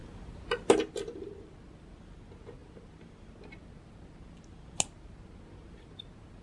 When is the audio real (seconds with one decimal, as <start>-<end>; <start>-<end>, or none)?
0.0-6.4